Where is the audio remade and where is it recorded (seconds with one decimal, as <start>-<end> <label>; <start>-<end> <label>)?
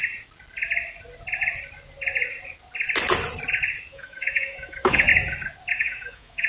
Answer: 0.0-3.9 recorded; 3.9-5.1 remade; 5.1-5.7 recorded; 5.7-6.5 remade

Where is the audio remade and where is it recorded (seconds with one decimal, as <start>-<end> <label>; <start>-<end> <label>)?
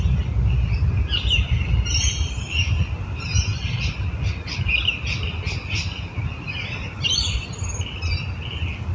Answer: 0.0-8.9 recorded